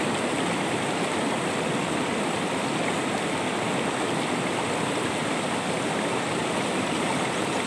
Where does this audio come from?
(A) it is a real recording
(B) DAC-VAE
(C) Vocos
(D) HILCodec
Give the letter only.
A